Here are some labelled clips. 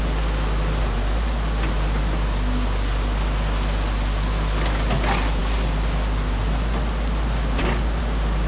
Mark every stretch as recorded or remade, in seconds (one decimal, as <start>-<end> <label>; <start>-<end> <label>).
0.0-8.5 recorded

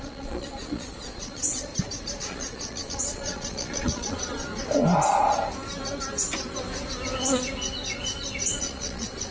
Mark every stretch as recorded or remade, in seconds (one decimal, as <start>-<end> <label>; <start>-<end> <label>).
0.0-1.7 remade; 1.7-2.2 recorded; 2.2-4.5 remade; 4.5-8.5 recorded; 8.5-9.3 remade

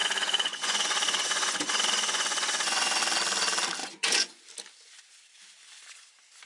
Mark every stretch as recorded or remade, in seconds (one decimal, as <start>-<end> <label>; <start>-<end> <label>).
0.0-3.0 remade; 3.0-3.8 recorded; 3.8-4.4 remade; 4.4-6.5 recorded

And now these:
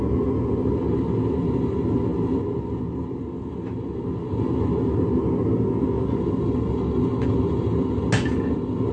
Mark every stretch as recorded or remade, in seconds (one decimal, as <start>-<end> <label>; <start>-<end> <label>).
0.0-8.9 recorded

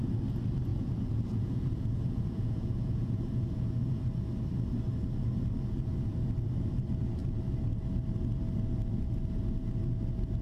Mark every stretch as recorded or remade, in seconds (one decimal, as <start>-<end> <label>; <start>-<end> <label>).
0.0-0.7 recorded; 0.7-4.0 remade; 4.0-10.4 recorded

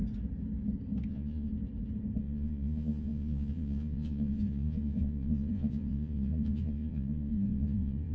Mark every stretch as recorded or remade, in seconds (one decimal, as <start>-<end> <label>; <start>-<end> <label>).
0.0-1.1 recorded; 1.1-1.5 remade; 1.5-2.2 recorded; 2.2-8.1 remade